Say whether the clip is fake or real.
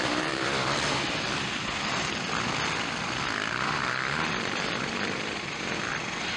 fake